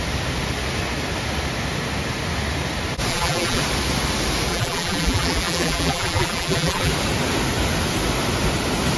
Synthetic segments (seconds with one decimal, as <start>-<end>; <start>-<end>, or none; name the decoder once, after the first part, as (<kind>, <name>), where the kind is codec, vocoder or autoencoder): 3.1-3.6 (vocoder, BigVGAN v2); 4.5-6.9